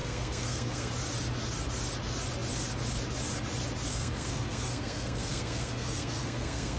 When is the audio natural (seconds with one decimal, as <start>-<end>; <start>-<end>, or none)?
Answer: 0.9-3.9